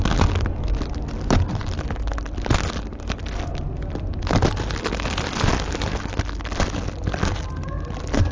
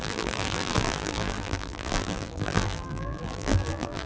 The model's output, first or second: second